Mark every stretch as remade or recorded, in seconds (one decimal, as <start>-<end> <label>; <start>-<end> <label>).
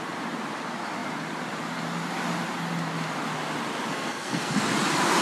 0.0-3.9 recorded; 3.9-4.6 remade; 4.6-5.2 recorded